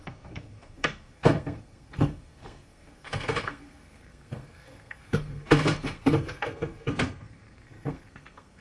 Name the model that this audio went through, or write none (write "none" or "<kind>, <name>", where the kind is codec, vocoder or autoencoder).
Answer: codec, SNAC